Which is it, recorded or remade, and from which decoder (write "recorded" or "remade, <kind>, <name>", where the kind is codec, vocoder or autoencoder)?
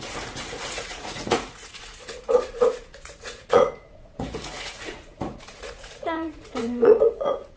remade, vocoder, Vocos